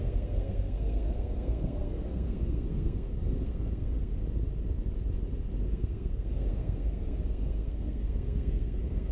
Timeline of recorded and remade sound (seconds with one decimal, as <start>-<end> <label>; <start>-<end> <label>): 0.0-4.1 remade; 4.1-5.7 recorded; 5.7-9.1 remade